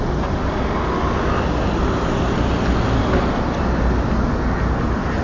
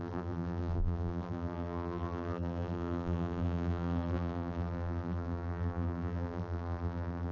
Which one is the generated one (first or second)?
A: second